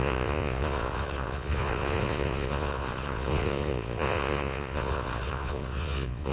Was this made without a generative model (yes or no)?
no